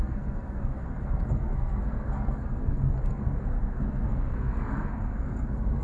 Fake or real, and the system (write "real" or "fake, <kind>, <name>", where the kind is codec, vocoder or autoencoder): fake, codec, SNAC